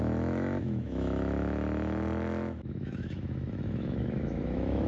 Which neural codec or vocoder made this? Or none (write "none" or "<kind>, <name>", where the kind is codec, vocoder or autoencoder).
autoencoder, DAC-VAE